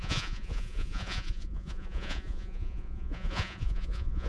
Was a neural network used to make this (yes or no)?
yes